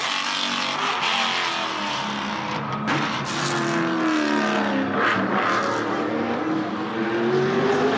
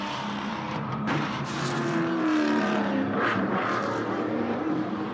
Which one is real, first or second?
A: first